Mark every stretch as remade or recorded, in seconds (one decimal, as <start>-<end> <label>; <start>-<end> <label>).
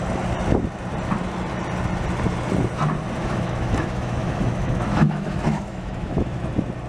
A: 0.0-3.2 recorded; 3.2-6.4 remade; 6.4-6.9 recorded